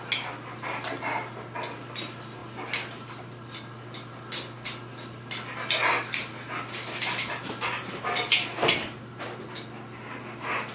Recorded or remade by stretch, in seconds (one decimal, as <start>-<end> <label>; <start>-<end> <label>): 0.0-10.7 recorded